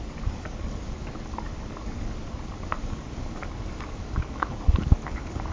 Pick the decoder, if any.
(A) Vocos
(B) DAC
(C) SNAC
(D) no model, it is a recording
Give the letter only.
B